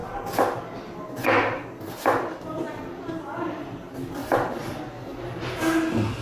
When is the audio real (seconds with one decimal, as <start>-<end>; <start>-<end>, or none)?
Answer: 0.0-4.2; 4.8-6.2